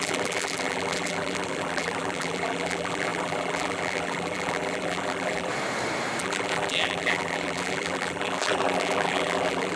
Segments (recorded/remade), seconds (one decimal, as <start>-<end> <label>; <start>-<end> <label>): 0.0-5.5 remade; 5.5-6.2 recorded; 6.2-9.8 remade